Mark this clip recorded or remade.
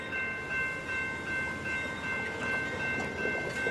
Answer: recorded